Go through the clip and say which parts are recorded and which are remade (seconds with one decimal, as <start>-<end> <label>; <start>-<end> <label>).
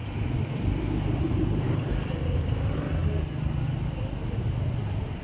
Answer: 0.0-5.2 recorded